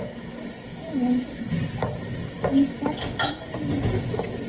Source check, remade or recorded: recorded